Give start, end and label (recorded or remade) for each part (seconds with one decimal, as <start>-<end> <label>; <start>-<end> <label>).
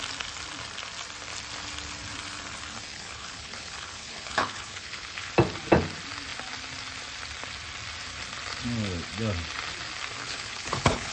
0.0-2.9 recorded; 2.9-5.3 remade; 5.3-10.2 recorded; 10.2-11.1 remade